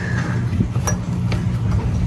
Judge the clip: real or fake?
real